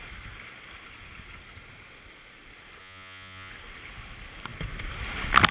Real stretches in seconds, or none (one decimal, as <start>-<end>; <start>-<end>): 0.0-2.8; 3.5-5.5